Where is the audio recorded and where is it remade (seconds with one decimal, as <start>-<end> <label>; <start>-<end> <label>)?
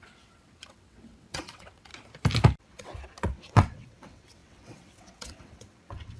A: 0.0-1.9 remade; 1.9-2.6 recorded; 2.6-6.2 remade